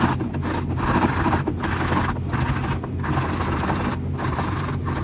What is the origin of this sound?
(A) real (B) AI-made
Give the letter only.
A